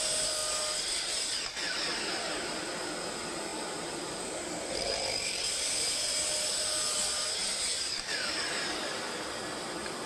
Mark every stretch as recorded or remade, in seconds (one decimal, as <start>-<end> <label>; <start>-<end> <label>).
0.0-3.5 recorded; 3.5-5.4 remade; 5.4-7.4 recorded; 7.4-9.7 remade; 9.7-10.1 recorded